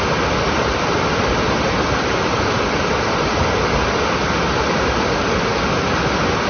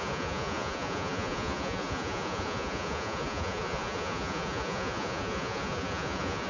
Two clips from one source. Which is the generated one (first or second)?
second